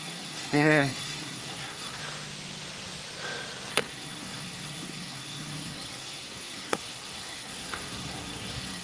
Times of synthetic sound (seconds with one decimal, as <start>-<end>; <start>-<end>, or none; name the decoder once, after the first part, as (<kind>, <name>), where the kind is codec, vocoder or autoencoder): 0.0-2.0 (codec, SNAC); 3.7-8.8

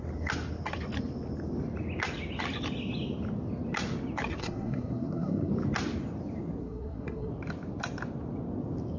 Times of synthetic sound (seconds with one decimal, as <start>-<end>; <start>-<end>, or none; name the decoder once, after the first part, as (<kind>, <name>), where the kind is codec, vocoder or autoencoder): 4.4-5.5 (codec, SNAC); 6.6-7.3